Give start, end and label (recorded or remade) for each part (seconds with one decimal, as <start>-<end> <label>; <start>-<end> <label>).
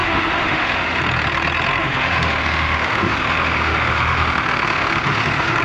0.0-1.0 remade; 1.0-1.8 recorded; 1.8-5.6 remade